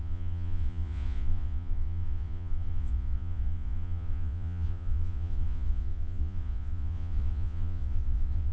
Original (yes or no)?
no